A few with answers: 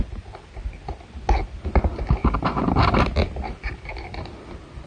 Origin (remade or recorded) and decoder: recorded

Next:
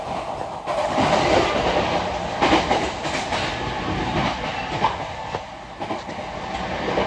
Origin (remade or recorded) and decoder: recorded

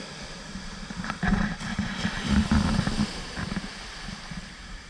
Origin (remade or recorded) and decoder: remade, vocoder, BigVGAN v2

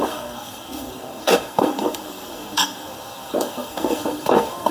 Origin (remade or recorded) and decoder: remade, codec, SNAC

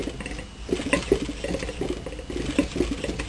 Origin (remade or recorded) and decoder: recorded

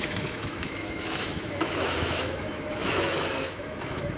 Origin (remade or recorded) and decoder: remade, autoencoder, DAC-VAE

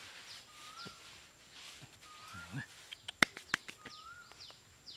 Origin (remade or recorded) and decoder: recorded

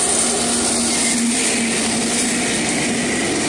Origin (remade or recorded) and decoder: recorded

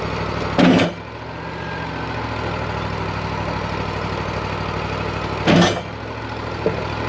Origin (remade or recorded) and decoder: recorded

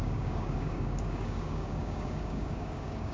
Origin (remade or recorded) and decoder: remade, codec, DAC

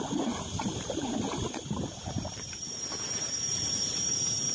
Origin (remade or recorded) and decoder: remade, vocoder, BigVGAN v2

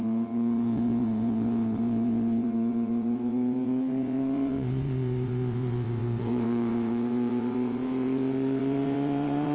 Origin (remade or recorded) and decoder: remade, vocoder, WaveNeXt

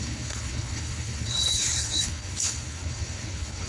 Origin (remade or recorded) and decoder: remade, codec, HILCodec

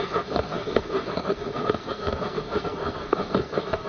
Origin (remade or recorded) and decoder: remade, codec, SNAC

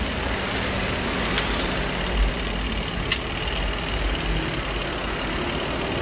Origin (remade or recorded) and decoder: recorded